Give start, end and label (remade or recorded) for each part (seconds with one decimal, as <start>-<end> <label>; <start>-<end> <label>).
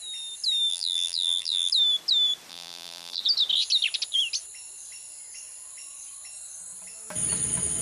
0.0-0.7 recorded; 0.7-1.7 remade; 1.7-2.5 recorded; 2.5-3.2 remade; 3.2-7.8 recorded